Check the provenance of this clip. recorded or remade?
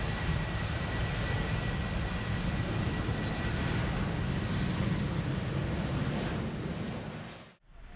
recorded